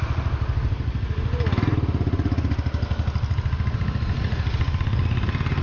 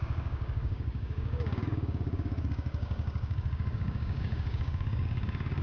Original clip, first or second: first